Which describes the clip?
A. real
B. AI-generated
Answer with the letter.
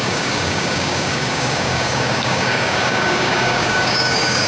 B